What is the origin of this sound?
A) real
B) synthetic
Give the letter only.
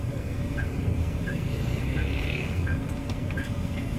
B